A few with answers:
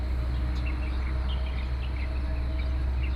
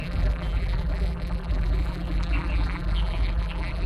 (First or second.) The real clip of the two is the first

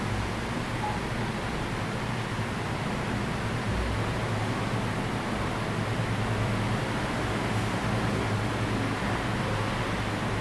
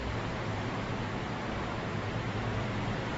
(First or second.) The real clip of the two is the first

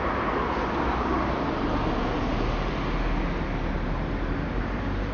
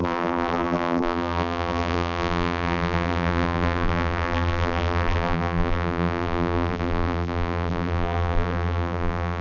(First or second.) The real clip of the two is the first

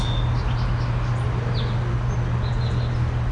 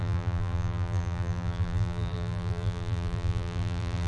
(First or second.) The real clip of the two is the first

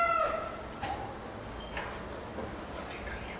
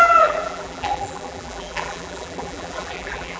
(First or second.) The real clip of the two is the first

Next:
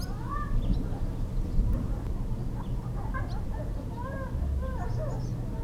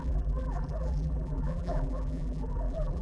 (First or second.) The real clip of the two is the first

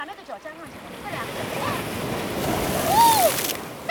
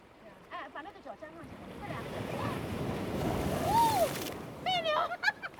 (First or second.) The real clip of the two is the first